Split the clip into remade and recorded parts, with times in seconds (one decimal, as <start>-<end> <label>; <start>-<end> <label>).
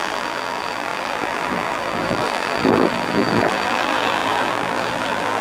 0.0-5.4 remade